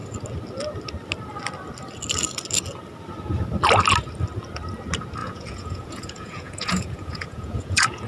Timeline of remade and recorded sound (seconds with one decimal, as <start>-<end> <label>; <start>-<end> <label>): 0.0-5.2 recorded; 5.2-8.1 remade

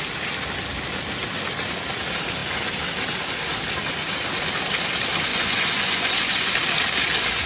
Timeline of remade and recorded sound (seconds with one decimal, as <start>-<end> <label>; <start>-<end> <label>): 0.0-5.3 recorded; 5.3-6.5 remade; 6.5-7.5 recorded

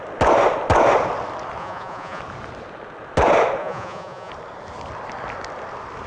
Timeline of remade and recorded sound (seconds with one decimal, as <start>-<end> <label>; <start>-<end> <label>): 0.0-1.6 recorded; 1.6-2.2 remade; 2.2-3.6 recorded; 3.6-4.3 remade; 4.3-6.1 recorded

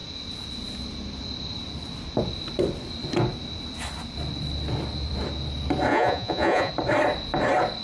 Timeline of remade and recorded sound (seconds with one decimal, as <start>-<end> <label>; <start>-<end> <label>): 0.0-5.9 recorded; 5.9-6.7 remade; 6.7-7.8 recorded

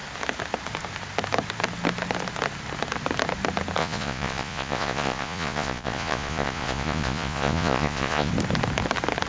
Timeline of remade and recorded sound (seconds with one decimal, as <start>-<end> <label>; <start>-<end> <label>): 0.0-3.8 recorded; 3.8-8.3 remade; 8.3-9.3 recorded